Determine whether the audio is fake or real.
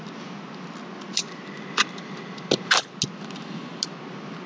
real